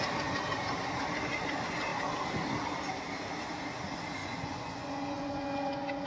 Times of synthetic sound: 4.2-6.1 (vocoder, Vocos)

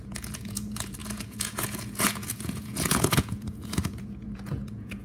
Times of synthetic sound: 0.0-5.0 (vocoder, Vocos)

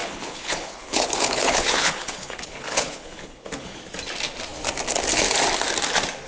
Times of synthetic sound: 0.0-3.8 (codec, HILCodec)

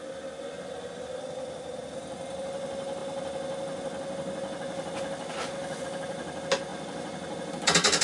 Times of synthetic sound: none

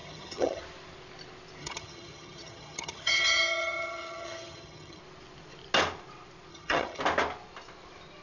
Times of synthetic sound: 0.0-0.6 (vocoder, HiFi-GAN); 1.6-5.0; 6.5-7.0

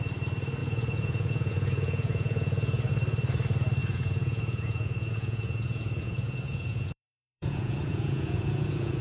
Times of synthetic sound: 0.6-2.9 (vocoder, Vocos); 3.8-9.0

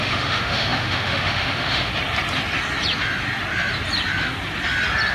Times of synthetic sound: 0.0-1.9 (autoencoder, DAC-VAE)